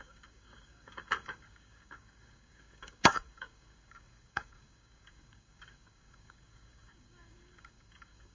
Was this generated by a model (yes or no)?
yes